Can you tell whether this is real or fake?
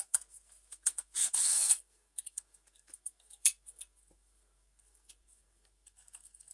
fake